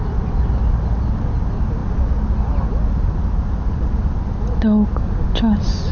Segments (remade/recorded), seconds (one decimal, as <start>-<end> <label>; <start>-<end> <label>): 0.0-5.9 recorded